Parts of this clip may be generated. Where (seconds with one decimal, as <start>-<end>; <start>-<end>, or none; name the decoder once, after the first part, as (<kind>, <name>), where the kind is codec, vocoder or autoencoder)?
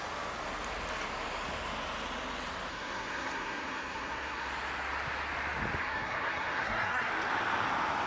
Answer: 2.7-4.5 (codec, SNAC); 5.8-7.1